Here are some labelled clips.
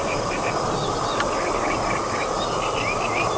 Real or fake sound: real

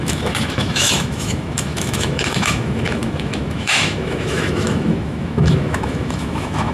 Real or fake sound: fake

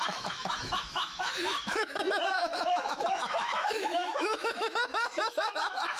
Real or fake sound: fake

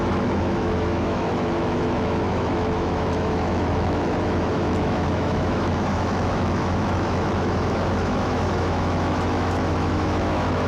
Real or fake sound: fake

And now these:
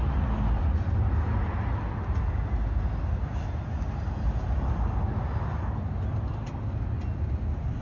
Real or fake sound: real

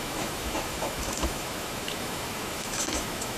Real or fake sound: fake